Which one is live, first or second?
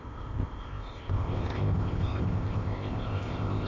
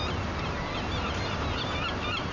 second